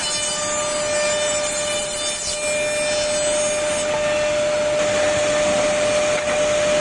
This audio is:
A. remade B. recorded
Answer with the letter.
B